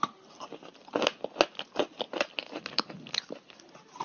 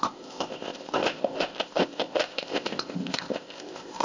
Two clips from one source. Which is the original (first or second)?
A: first